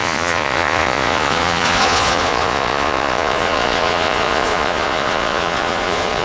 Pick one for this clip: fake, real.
fake